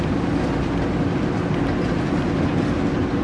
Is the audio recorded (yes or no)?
yes